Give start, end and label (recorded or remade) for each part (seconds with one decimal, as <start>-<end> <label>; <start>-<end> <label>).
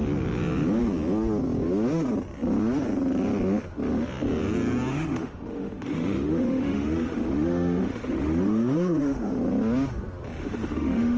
0.0-4.9 recorded; 4.9-9.4 remade; 9.4-10.4 recorded; 10.4-11.2 remade